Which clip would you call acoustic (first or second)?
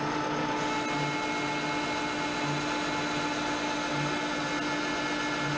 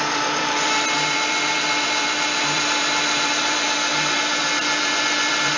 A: first